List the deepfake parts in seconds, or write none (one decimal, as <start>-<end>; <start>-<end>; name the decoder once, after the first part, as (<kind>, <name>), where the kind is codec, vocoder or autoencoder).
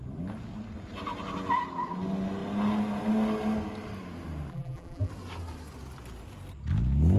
4.5-5.1 (vocoder, BigVGAN v2)